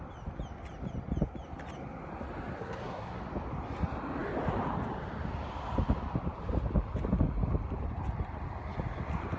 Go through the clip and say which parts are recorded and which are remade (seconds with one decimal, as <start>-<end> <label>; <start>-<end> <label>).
0.0-2.6 recorded; 2.6-3.2 remade; 3.2-9.4 recorded